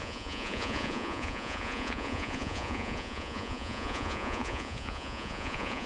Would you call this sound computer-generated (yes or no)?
yes